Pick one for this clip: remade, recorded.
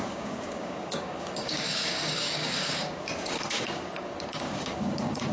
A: remade